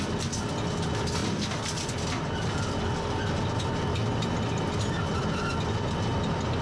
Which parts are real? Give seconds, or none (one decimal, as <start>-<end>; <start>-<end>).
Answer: 0.0-6.6

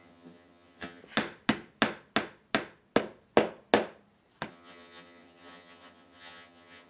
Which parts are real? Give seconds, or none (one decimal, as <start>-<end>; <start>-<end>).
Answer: 1.0-4.5

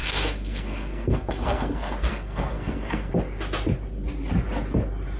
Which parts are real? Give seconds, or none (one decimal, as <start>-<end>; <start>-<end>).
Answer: 3.1-5.2

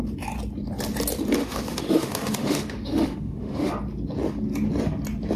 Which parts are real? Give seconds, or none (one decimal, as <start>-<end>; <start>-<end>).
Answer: 0.0-1.4; 3.7-5.4